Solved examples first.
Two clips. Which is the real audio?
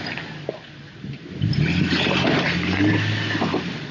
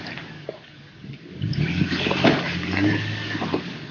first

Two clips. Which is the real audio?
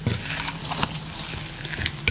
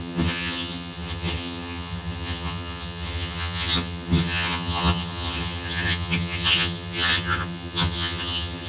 first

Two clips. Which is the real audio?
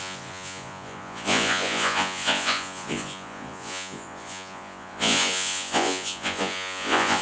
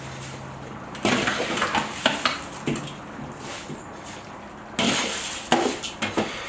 second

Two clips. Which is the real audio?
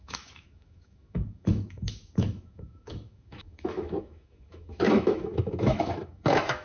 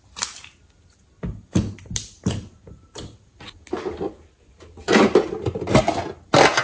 second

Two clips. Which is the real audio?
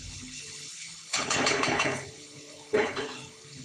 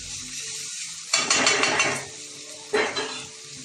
second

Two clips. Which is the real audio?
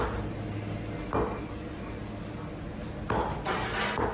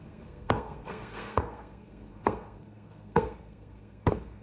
first